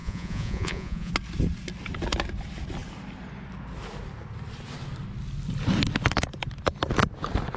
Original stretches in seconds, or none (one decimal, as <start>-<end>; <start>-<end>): 1.1-7.6